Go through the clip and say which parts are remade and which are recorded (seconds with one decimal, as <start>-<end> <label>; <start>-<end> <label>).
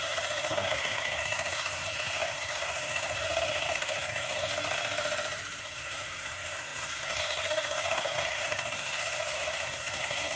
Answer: 0.0-4.5 remade; 4.5-5.6 recorded; 5.6-10.4 remade